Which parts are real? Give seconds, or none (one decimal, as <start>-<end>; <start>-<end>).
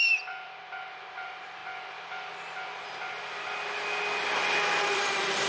1.6-4.9